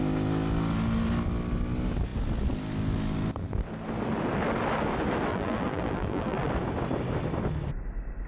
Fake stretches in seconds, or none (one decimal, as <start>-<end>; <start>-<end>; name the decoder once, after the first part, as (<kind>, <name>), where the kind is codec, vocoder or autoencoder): 5.3-6.5 (vocoder, BigVGAN v2)